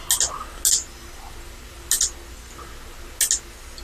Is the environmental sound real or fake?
real